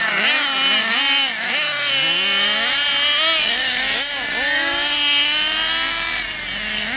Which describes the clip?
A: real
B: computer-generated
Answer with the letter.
A